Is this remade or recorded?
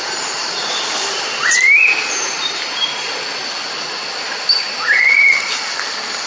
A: recorded